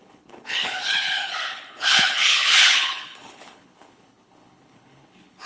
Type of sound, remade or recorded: remade